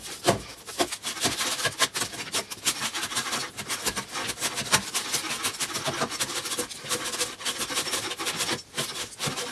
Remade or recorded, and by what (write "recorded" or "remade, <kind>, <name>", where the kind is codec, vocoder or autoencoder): recorded